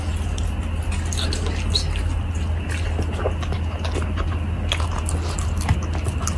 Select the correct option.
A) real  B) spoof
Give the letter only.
A